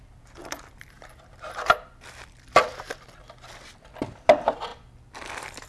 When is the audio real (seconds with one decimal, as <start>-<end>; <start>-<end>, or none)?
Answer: 0.0-0.4; 3.0-4.7